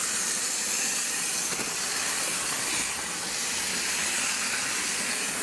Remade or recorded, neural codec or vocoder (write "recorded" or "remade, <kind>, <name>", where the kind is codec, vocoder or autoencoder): recorded